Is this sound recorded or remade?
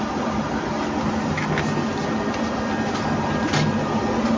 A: recorded